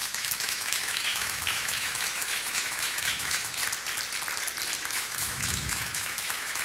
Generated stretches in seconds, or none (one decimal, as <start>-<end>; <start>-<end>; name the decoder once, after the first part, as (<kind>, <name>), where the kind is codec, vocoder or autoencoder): 0.0-3.6 (autoencoder, DAC-VAE); 4.8-6.6